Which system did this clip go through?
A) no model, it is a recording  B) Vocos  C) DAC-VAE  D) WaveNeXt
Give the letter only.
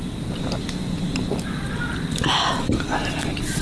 A